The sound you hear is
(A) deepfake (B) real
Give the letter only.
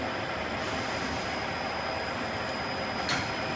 B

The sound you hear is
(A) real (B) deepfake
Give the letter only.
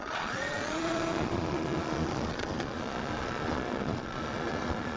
B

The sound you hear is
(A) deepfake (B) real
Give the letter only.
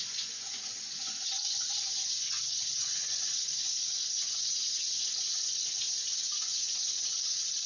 A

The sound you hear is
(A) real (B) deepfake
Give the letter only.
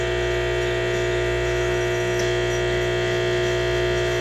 A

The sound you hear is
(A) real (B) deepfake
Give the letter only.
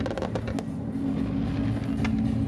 A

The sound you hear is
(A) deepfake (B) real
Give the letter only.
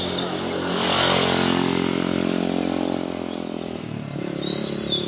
B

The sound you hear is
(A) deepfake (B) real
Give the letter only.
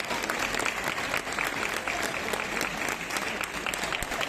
B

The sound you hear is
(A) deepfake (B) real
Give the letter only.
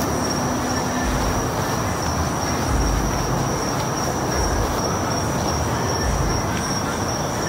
B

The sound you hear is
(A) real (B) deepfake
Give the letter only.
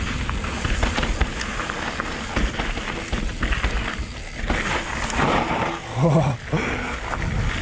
A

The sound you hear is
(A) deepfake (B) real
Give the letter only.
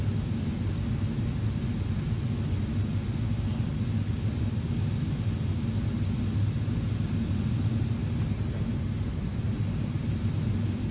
B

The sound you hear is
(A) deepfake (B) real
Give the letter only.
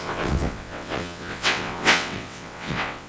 A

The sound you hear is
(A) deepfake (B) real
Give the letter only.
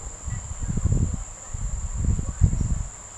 B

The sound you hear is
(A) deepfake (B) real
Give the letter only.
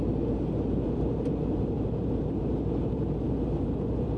A